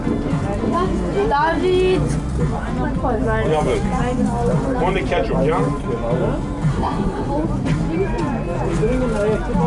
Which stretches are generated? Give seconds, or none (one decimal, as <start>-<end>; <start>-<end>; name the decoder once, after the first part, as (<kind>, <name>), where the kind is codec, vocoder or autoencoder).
6.7-7.3 (codec, SNAC)